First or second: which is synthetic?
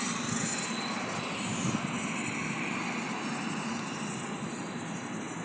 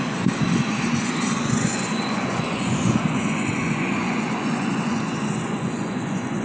second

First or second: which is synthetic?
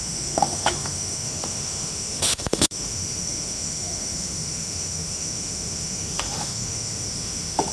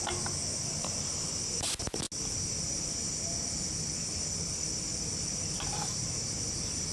first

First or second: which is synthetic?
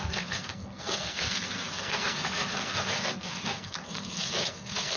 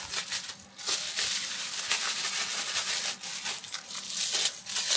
first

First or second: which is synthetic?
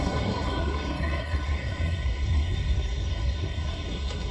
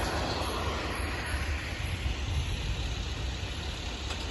first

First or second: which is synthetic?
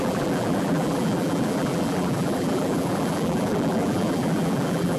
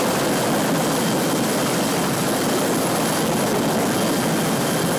first